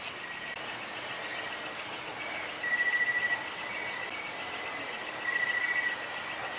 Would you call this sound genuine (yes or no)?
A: yes